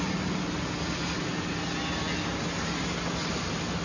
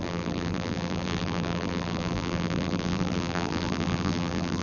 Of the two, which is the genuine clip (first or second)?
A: first